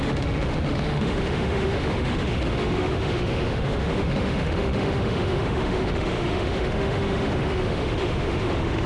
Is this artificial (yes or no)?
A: yes